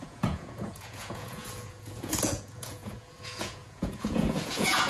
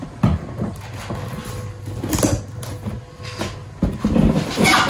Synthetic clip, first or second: first